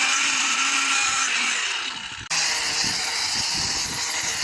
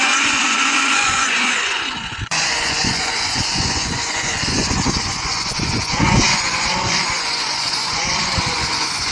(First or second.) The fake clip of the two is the second